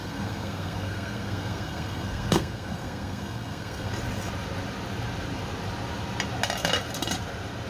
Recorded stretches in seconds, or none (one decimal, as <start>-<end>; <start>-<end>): 3.9-7.7